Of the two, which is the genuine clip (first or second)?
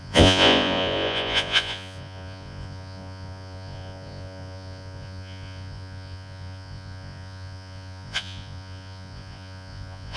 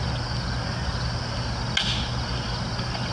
second